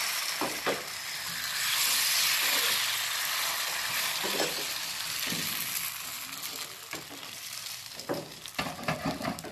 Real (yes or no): yes